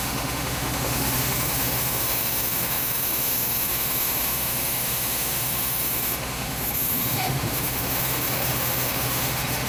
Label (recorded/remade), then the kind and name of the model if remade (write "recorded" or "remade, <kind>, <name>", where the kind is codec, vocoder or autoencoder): remade, autoencoder, DAC-VAE